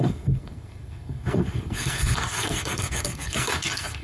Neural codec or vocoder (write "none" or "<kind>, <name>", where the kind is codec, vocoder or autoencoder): codec, SNAC